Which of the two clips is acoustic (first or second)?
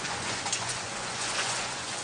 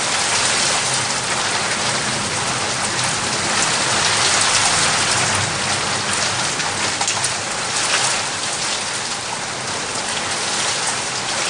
second